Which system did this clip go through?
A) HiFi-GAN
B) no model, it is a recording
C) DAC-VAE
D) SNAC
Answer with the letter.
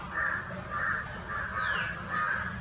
B